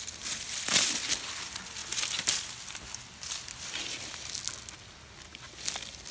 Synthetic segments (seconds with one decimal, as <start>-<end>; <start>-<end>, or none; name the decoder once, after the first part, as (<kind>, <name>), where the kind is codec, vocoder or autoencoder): none